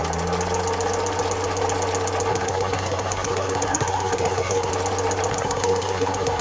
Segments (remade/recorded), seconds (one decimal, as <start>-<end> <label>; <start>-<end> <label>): 0.0-2.3 recorded; 2.3-4.7 remade; 4.7-5.3 recorded; 5.3-6.4 remade